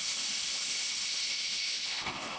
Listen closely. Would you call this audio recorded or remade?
remade